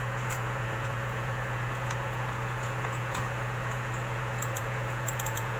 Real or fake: fake